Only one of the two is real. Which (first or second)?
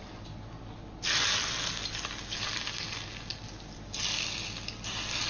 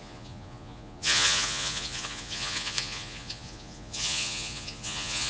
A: first